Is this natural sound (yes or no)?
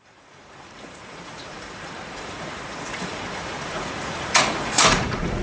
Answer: no